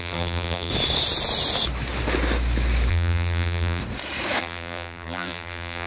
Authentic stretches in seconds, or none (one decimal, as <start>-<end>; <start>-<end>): 0.7-2.9; 3.8-4.4